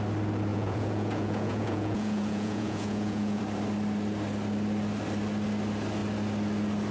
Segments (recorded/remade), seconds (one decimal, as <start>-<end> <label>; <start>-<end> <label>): 0.0-0.5 recorded; 0.5-3.4 remade; 3.4-6.9 recorded